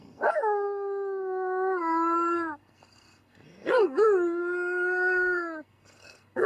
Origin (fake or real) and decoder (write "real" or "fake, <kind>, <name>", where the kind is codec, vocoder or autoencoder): fake, codec, SNAC